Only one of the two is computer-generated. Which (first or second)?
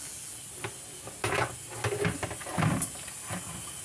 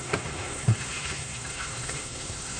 second